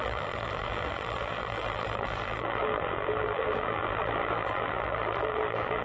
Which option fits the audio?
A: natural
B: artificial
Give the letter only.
B